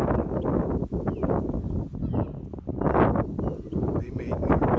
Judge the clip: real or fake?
real